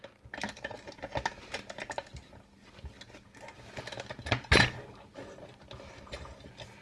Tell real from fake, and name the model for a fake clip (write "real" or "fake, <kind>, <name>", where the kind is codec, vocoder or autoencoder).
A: real